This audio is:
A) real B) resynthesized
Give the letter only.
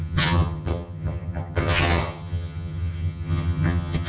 B